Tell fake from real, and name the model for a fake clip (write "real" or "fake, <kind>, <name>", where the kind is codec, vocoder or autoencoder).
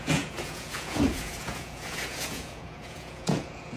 fake, vocoder, Vocos